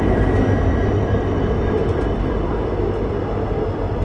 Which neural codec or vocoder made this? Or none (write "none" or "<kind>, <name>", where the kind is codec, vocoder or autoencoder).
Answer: none